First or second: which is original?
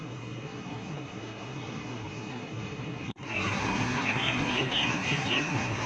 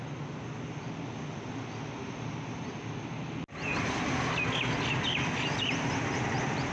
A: second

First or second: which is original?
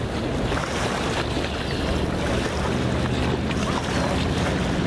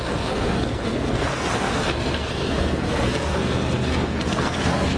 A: first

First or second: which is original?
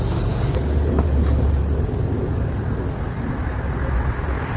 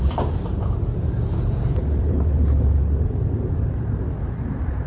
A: first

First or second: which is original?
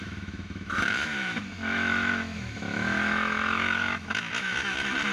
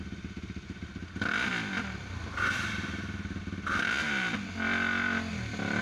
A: second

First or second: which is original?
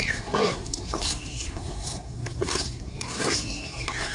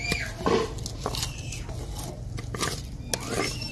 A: second